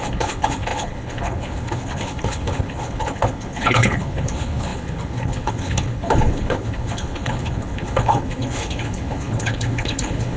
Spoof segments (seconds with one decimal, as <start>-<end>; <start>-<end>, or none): 0.0-10.4